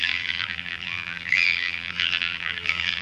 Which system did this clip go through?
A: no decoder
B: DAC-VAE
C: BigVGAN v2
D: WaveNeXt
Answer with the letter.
C